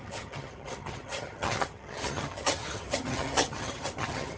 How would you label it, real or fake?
fake